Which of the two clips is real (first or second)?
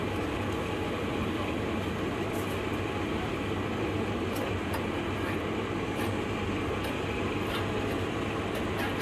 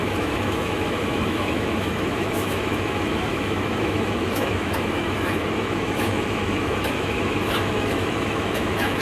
first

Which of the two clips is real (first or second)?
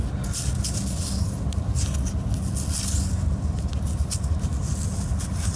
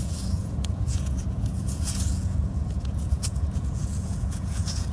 first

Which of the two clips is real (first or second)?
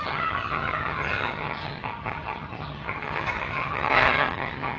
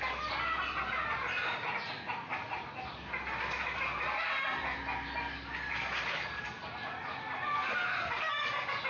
second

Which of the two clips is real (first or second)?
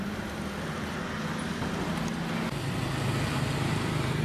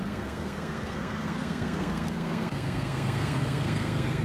first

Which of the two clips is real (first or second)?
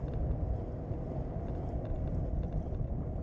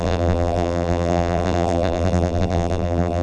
first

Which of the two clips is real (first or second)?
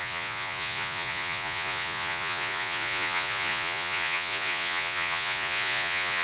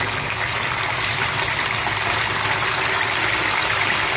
second